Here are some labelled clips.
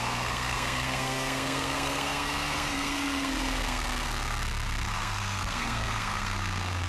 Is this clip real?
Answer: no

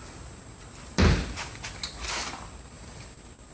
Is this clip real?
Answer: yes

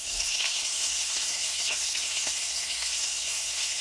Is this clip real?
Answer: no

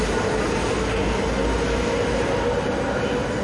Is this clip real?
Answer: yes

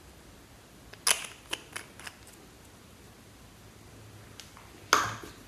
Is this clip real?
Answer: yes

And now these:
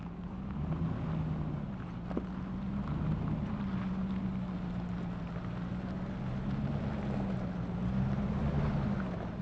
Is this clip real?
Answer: yes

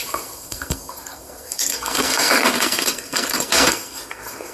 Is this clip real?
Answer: no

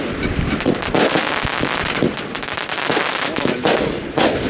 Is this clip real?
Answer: yes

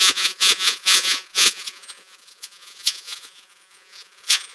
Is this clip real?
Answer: no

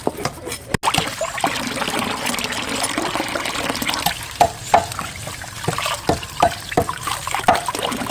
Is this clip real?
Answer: yes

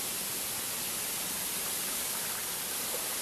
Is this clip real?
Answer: yes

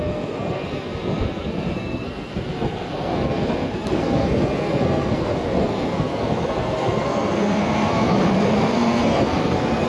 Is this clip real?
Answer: no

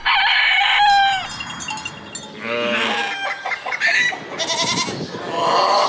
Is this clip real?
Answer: yes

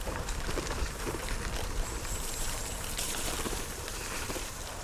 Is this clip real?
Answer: no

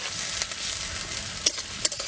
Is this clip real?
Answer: yes